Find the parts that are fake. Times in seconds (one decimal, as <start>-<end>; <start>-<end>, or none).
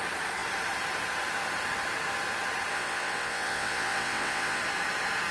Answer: 2.7-4.6